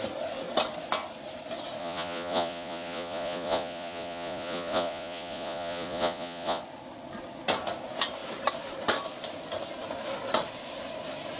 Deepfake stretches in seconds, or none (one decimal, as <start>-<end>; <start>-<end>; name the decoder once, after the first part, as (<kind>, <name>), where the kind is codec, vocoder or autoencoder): 1.8-6.6 (vocoder, Vocos)